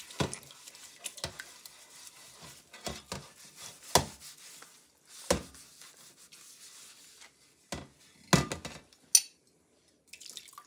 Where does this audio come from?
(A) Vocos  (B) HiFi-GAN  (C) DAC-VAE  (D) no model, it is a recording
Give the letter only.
D